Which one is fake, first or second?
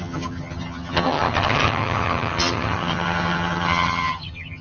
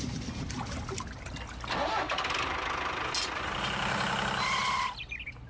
first